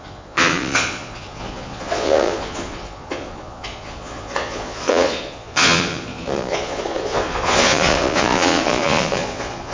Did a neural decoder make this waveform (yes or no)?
yes